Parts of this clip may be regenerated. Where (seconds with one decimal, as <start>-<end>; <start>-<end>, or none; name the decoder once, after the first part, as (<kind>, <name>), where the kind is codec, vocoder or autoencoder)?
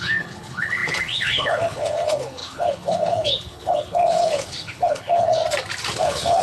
0.0-5.4 (codec, HILCodec); 6.0-6.4